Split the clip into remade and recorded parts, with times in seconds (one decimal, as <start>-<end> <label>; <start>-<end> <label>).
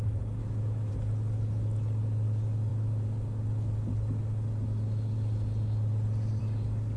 0.0-0.4 recorded; 0.4-0.9 remade; 0.9-7.0 recorded